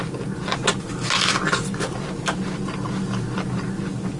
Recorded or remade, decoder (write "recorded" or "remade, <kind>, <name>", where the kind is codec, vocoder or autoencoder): recorded